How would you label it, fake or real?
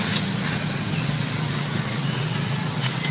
fake